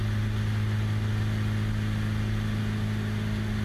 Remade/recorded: recorded